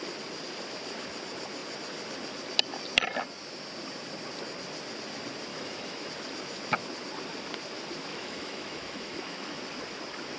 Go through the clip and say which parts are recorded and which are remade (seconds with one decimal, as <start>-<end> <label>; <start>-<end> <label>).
0.0-5.5 recorded; 5.5-6.1 remade; 6.1-8.1 recorded; 8.1-9.6 remade; 9.6-10.4 recorded